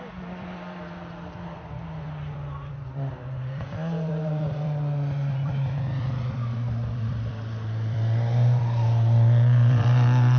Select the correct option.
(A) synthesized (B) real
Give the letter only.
A